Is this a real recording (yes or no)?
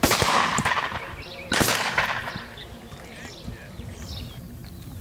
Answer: no